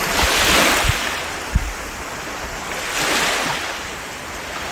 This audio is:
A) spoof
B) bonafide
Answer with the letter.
B